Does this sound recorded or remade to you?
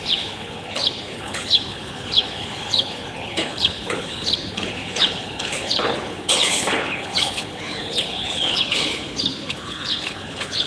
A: remade